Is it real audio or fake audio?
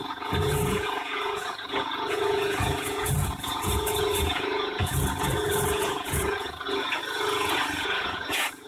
fake